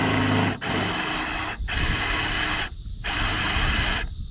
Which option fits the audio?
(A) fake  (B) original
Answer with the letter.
B